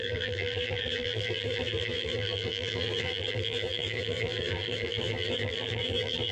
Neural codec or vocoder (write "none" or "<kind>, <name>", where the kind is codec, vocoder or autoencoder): vocoder, BigVGAN v2